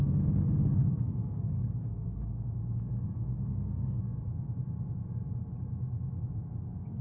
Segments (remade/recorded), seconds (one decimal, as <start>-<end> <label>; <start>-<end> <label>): 0.0-0.8 recorded; 0.8-4.0 remade; 4.0-7.0 recorded